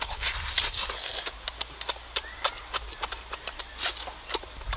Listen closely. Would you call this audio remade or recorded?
recorded